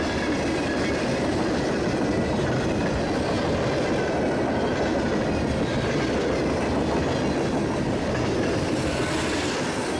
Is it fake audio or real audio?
real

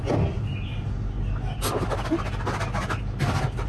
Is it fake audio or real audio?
real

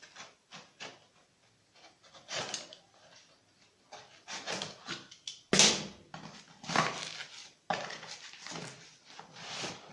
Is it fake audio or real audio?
real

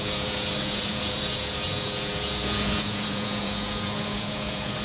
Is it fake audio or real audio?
fake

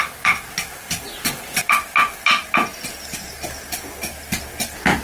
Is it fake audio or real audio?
real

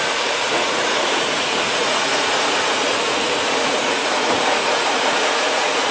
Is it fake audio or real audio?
fake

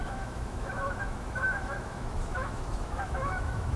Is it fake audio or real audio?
fake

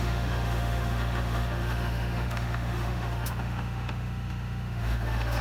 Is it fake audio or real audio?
fake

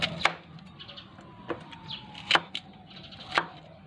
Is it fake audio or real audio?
real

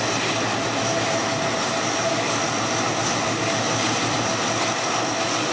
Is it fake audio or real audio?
real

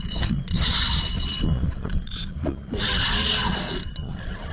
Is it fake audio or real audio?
fake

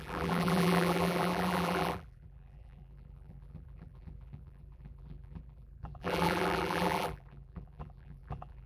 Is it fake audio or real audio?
fake